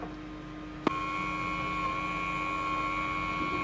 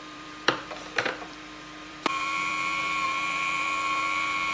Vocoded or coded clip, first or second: second